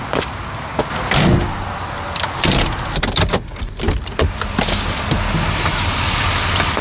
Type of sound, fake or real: real